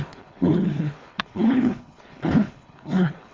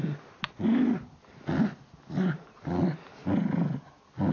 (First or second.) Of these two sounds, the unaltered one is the second